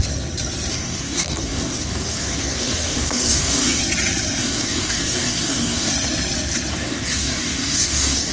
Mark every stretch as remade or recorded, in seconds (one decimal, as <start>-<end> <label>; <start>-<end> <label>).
0.0-0.7 recorded; 0.7-3.8 remade; 3.8-4.4 recorded; 4.4-5.9 remade; 5.9-6.7 recorded; 6.7-8.3 remade